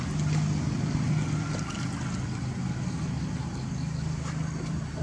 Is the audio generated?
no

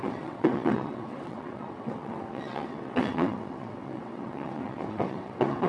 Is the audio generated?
yes